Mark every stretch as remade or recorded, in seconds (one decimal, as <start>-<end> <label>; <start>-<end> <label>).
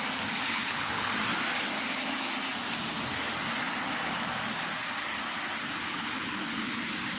0.0-0.4 recorded; 0.4-1.1 remade; 1.1-5.8 recorded; 5.8-6.8 remade; 6.8-7.2 recorded